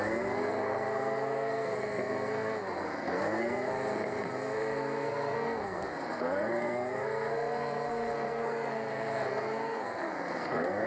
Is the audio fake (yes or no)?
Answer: yes